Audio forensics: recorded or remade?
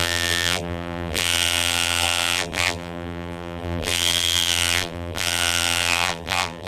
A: remade